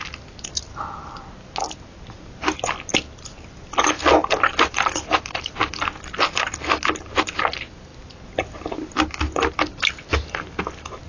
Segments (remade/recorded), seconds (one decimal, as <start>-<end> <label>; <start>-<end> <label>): 0.0-11.1 recorded